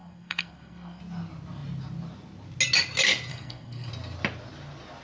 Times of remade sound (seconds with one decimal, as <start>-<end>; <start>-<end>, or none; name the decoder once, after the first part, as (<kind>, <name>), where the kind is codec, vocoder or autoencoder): 0.0-1.0 (codec, SNAC); 3.3-3.9